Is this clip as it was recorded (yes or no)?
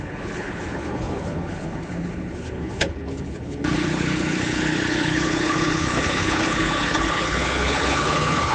no